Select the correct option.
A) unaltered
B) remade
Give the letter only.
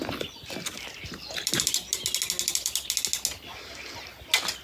A